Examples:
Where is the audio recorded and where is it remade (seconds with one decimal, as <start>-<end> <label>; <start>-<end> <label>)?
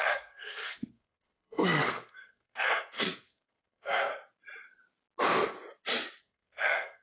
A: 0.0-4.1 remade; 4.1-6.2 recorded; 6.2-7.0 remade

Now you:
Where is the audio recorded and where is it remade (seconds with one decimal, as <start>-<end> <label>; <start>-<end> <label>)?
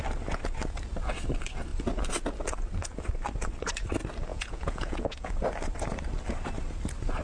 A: 0.0-4.3 recorded; 4.3-5.3 remade; 5.3-7.2 recorded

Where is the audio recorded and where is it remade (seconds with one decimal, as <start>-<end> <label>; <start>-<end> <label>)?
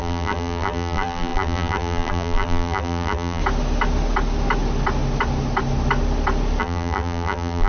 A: 0.0-3.4 remade; 3.4-6.6 recorded; 6.6-7.7 remade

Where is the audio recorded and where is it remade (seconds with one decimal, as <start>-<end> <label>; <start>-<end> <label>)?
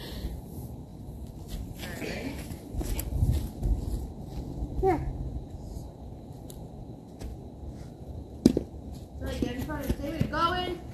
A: 0.0-10.9 recorded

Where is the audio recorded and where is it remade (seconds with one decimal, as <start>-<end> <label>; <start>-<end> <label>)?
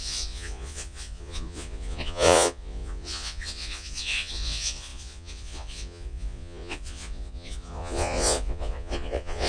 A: 0.0-9.5 remade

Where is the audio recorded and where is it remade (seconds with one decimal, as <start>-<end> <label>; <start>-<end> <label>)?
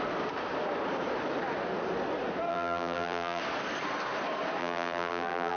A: 0.0-2.5 recorded; 2.5-3.4 remade; 3.4-4.6 recorded; 4.6-5.6 remade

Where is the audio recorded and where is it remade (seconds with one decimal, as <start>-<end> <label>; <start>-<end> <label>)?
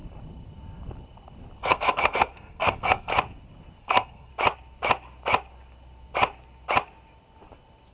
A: 0.0-1.6 recorded; 1.6-3.1 remade; 3.1-3.8 recorded; 3.8-4.3 remade; 4.3-7.9 recorded